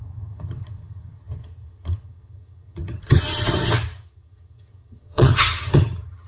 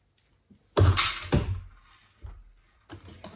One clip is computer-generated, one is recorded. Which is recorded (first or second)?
second